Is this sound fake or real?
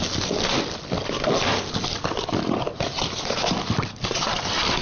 real